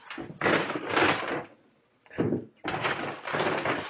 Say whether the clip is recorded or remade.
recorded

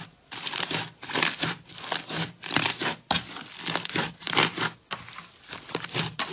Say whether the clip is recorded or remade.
recorded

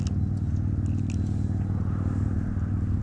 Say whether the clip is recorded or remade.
recorded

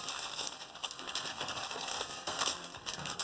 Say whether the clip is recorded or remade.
remade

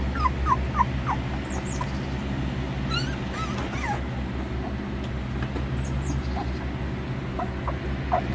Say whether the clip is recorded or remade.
recorded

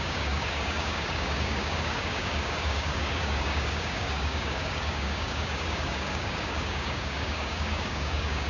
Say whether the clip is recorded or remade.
remade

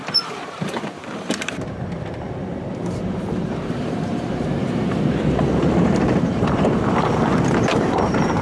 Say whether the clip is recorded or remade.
remade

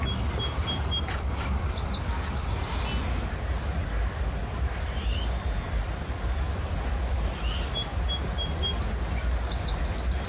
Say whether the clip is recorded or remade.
recorded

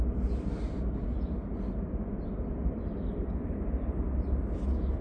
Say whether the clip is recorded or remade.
recorded